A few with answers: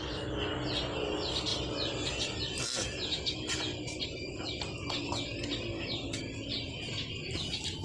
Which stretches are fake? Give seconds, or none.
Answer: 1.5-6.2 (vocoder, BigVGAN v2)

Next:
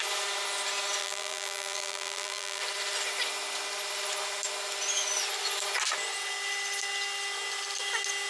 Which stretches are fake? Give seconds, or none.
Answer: 1.0-2.6 (vocoder, BigVGAN v2)

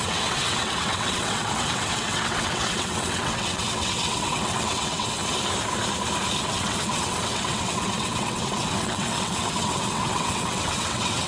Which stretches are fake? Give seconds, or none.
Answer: 0.0-5.2 (vocoder, WaveNeXt); 6.4-11.3